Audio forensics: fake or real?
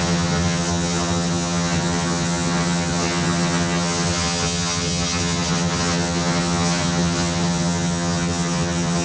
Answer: fake